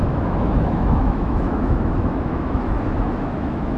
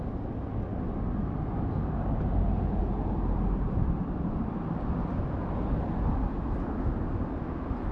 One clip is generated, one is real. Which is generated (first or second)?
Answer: first